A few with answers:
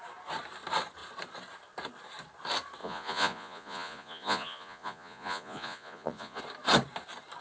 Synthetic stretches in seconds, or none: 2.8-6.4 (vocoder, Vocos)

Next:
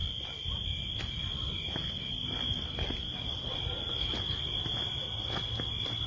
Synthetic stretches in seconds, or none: none

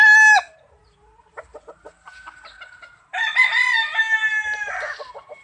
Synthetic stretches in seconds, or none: none